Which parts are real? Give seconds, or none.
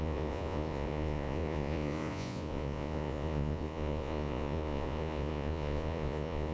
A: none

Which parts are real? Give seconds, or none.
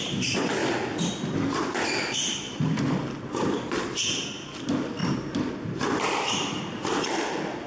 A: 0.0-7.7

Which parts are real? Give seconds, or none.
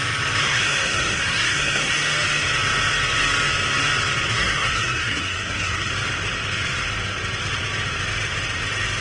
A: 0.0-0.4; 1.9-4.3; 5.9-9.0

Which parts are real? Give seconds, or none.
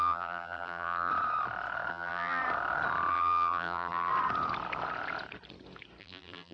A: 1.1-1.9; 2.4-3.1; 4.1-6.0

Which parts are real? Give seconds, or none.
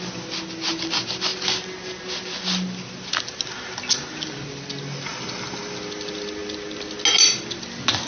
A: 0.0-8.1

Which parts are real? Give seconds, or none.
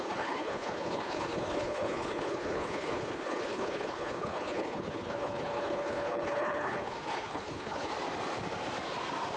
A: 7.9-9.4